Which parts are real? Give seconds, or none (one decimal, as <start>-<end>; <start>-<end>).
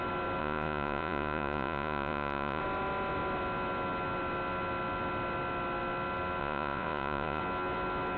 0.0-0.4; 2.6-6.4; 7.4-8.2